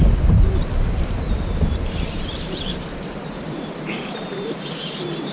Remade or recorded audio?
remade